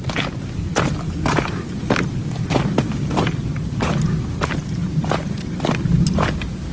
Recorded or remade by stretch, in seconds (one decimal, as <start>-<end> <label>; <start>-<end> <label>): 0.0-3.6 recorded; 3.6-4.2 remade; 4.2-4.8 recorded; 4.8-5.8 remade; 5.8-6.7 recorded